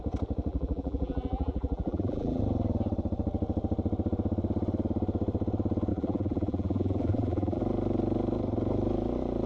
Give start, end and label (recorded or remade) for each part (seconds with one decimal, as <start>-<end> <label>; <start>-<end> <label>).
0.0-0.5 recorded; 0.5-2.4 remade; 2.4-5.9 recorded; 5.9-7.6 remade; 7.6-9.5 recorded